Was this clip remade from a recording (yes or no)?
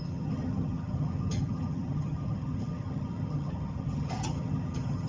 yes